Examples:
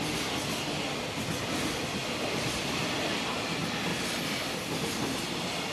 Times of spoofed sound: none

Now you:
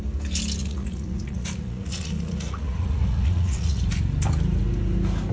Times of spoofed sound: 0.6-3.8 (vocoder, Vocos)

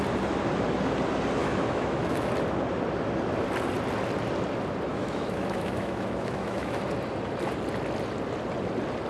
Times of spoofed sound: 1.4-2.3 (autoencoder, DAC-VAE); 4.9-6.8

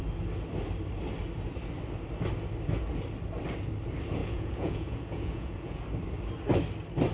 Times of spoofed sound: 4.2-5.8 (vocoder, Vocos)

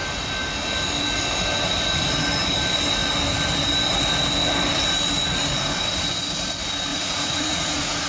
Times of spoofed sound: 6.9-8.1 (vocoder, Vocos)

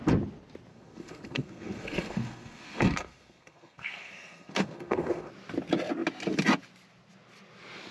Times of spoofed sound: 0.7-5.3 (codec, SNAC)

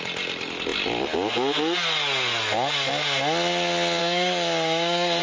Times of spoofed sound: 4.0-5.2 (codec, DAC)

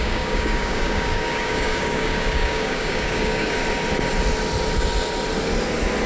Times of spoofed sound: 0.0-3.6 (codec, DAC)